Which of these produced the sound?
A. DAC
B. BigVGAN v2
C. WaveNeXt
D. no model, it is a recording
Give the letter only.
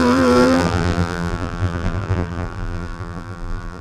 B